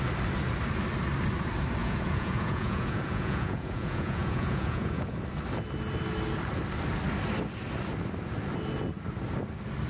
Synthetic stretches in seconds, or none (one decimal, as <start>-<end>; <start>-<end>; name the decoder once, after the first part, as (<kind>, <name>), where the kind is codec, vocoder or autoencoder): 1.8-5.2 (vocoder, Vocos)